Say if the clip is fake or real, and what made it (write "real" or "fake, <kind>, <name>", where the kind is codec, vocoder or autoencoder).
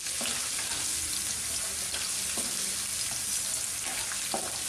real